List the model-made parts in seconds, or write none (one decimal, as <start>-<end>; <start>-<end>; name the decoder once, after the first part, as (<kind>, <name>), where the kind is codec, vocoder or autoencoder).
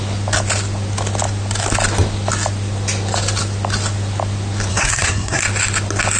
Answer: 4.7-5.4 (codec, SNAC)